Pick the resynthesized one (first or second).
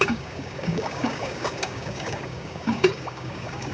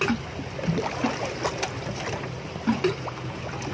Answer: first